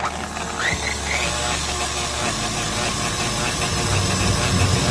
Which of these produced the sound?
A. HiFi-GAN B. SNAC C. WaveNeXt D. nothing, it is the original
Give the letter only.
D